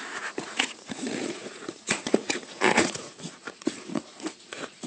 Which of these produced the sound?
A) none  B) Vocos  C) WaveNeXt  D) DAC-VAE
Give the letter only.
B